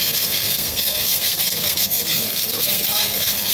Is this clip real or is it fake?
fake